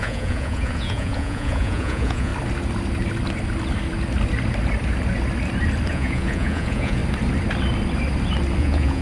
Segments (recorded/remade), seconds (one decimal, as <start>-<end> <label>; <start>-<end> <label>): 0.0-2.3 remade; 2.3-5.9 recorded; 5.9-7.0 remade; 7.0-8.6 recorded; 8.6-9.0 remade

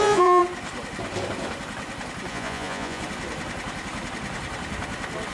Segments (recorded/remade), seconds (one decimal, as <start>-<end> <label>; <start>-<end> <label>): 0.0-0.4 remade; 0.4-2.3 recorded; 2.3-3.0 remade; 3.0-5.3 recorded

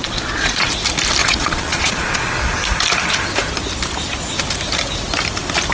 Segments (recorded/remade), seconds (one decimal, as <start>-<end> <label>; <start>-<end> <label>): 0.0-0.7 remade; 0.7-1.2 recorded; 1.2-2.3 remade; 2.3-5.7 recorded

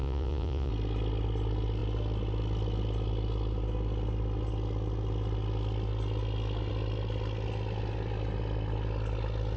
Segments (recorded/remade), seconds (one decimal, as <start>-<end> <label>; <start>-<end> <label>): 0.0-0.7 remade; 0.7-9.6 recorded